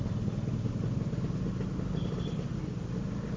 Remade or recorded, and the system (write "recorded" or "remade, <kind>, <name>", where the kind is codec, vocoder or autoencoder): recorded